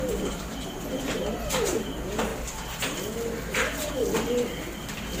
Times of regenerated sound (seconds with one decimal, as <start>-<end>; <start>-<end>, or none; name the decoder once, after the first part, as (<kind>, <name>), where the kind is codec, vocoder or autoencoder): none